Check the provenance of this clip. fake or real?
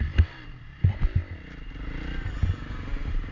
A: real